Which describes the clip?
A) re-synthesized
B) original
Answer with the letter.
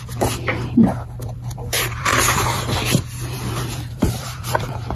A